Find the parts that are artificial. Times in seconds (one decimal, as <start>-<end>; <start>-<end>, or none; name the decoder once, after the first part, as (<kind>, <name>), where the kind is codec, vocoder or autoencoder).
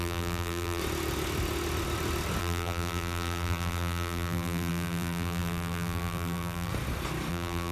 0.0-0.8 (vocoder, BigVGAN v2); 2.4-6.7; 7.3-7.7